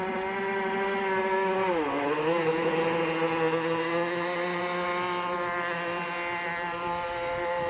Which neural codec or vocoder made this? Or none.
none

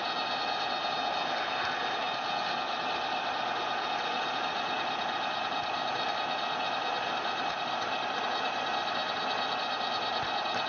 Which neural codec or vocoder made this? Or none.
none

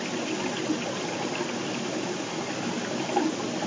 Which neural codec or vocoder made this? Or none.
none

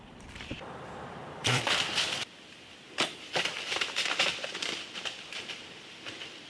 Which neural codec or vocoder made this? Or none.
vocoder, BigVGAN v2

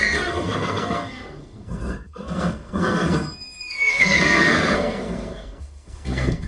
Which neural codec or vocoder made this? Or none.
codec, SNAC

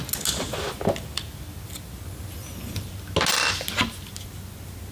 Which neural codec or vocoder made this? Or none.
none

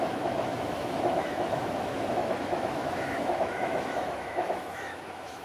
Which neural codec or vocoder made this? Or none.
autoencoder, DAC-VAE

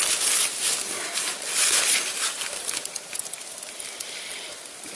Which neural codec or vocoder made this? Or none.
vocoder, BigVGAN v2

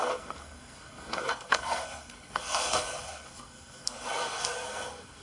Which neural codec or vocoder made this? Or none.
codec, SNAC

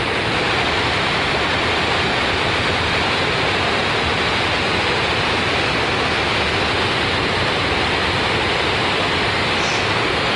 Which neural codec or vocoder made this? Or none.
none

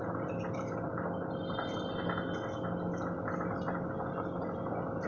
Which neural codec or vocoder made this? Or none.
none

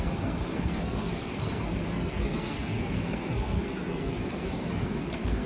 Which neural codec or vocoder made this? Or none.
codec, SNAC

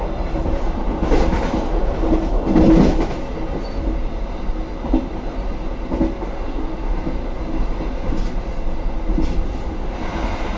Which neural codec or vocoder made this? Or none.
none